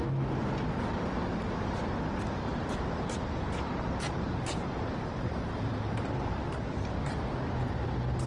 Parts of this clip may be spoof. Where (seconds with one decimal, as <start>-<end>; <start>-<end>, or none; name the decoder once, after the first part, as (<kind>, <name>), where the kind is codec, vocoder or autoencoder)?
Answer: 2.5-5.1 (vocoder, BigVGAN v2); 6.4-7.0